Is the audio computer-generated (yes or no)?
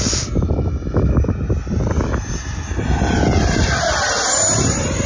no